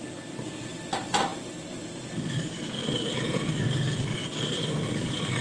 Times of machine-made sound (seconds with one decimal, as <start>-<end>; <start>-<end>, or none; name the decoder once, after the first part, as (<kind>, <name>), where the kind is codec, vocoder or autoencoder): none